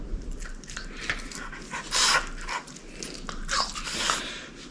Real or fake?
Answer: real